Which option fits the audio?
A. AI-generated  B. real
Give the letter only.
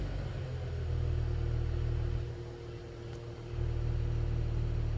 B